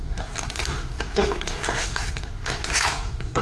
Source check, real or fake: fake